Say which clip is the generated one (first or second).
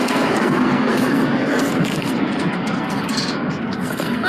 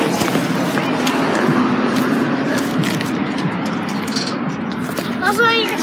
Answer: first